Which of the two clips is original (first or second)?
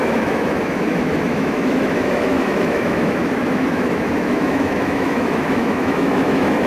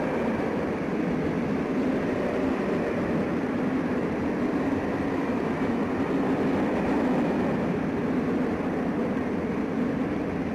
second